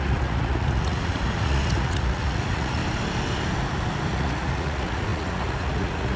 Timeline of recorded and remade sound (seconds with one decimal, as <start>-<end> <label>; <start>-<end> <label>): 0.0-2.8 remade; 2.8-4.1 recorded; 4.1-6.2 remade